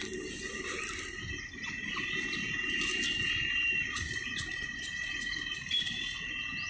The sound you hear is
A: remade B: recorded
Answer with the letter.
B